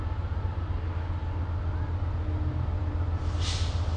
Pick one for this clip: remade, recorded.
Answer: recorded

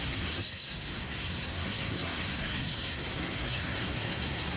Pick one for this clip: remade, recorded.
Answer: remade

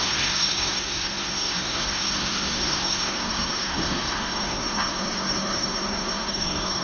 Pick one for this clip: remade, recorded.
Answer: remade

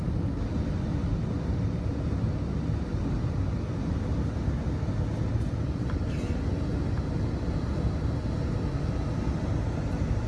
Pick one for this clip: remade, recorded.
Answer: recorded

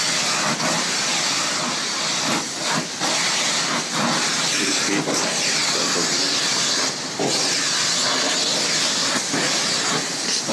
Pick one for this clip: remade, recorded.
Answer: recorded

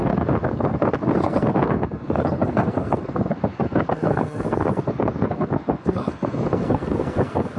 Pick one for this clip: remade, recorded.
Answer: remade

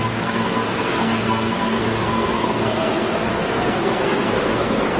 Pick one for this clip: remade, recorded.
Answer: remade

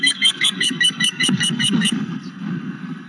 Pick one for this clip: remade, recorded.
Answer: remade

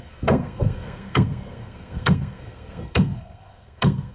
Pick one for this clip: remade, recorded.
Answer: remade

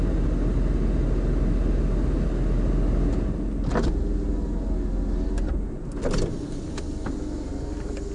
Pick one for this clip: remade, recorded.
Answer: recorded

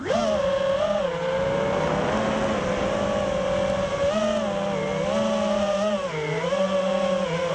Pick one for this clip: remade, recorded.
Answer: recorded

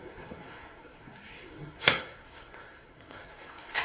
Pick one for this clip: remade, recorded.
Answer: remade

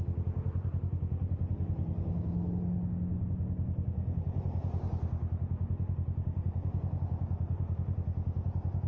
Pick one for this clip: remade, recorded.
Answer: recorded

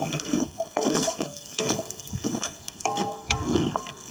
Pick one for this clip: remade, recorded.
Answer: remade